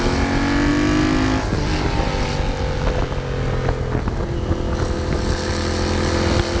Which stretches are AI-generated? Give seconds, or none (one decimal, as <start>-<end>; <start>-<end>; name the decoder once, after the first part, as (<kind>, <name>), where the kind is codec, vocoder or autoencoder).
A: none